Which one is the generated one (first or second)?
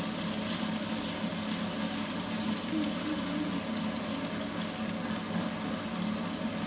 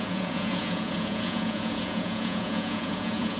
second